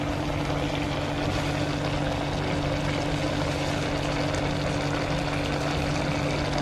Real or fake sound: real